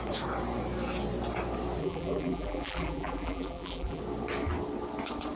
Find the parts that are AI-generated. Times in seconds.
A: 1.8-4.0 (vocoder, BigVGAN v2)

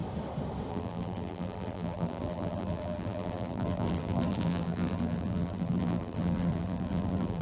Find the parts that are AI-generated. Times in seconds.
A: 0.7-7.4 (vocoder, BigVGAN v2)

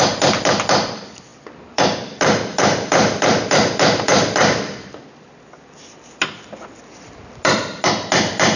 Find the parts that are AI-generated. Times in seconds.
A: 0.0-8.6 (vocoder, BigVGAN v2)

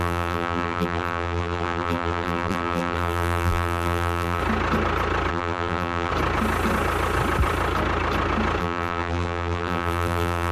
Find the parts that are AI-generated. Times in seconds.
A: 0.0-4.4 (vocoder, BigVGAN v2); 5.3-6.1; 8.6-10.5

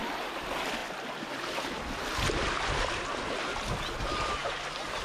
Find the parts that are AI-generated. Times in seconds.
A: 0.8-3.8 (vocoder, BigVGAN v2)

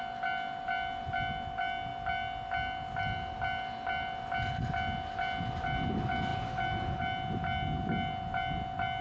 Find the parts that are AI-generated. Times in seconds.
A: none

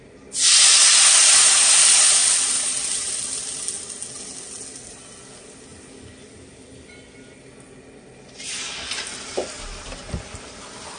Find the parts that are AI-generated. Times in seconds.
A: none